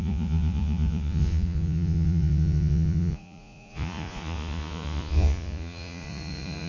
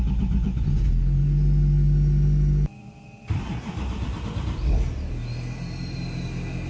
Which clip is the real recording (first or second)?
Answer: second